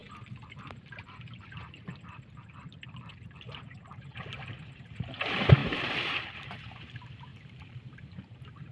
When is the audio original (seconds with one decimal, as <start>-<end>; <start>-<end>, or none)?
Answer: 0.0-3.1